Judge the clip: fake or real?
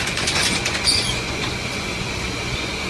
fake